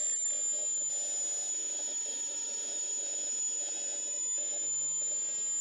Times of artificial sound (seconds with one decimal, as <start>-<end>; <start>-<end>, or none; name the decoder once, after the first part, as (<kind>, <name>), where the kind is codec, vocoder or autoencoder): 0.0-0.9 (autoencoder, DAC-VAE); 1.5-5.6